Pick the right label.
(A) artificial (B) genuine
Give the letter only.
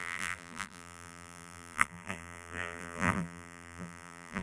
A